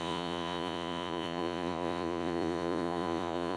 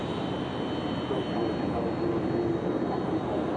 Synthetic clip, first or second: first